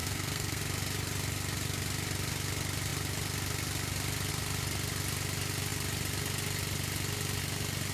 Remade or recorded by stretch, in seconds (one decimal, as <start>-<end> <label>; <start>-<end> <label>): 0.0-0.6 remade; 0.6-7.9 recorded